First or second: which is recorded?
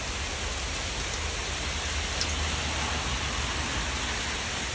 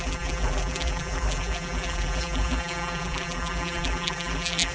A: first